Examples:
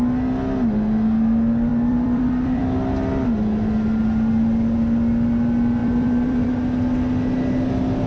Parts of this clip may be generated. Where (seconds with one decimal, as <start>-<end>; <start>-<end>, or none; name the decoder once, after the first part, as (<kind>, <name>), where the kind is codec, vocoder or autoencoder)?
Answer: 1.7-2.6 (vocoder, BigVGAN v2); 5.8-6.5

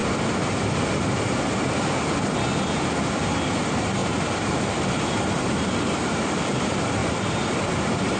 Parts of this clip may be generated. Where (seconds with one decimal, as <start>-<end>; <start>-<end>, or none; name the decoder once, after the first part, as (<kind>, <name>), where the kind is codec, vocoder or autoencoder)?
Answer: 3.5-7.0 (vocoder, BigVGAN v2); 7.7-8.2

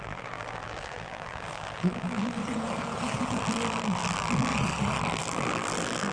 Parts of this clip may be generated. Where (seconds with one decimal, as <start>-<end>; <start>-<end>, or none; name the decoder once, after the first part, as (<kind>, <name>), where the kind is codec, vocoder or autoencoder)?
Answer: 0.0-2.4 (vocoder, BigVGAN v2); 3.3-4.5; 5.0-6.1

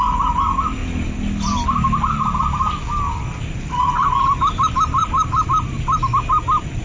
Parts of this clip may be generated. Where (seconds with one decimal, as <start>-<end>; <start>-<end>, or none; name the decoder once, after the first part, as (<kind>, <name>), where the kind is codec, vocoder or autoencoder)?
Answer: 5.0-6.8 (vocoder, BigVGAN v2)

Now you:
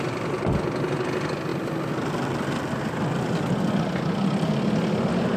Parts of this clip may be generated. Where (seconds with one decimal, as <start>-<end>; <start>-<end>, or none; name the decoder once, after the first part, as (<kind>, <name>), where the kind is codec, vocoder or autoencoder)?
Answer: none